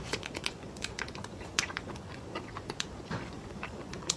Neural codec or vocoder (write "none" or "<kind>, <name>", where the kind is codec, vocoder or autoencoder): vocoder, Vocos